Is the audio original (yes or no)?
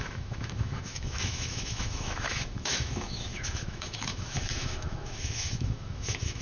no